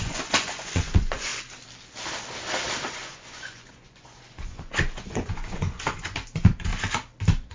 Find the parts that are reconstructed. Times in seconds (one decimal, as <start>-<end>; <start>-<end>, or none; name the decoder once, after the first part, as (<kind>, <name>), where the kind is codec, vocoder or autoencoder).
0.0-1.3 (vocoder, Vocos); 2.9-6.7